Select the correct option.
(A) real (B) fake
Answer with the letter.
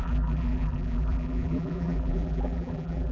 B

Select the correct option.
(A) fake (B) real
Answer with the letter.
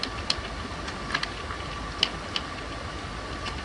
B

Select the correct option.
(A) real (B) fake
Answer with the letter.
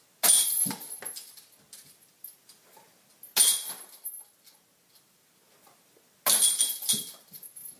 A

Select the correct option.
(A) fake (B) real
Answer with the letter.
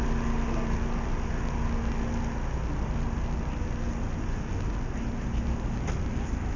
B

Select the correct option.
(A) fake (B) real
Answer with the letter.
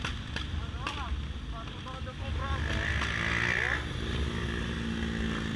B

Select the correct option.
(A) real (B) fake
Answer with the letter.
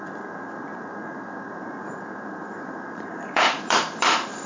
B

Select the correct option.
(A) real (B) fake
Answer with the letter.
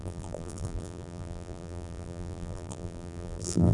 B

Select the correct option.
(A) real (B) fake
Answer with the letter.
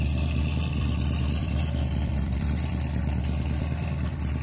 B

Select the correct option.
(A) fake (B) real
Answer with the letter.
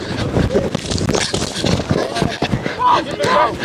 B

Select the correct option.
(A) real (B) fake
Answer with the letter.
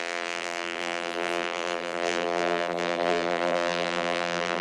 B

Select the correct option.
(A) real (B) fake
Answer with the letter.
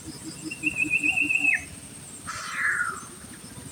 A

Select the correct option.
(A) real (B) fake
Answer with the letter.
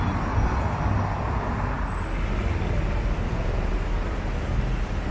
A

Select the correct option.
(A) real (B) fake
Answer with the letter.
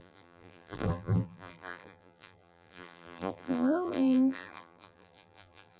B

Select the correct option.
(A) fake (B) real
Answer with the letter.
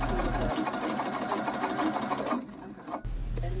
B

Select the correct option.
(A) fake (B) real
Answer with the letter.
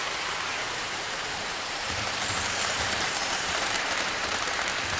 A